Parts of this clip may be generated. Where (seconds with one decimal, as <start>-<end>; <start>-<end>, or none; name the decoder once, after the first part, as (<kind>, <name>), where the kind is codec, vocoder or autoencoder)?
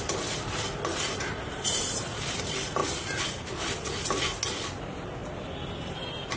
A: none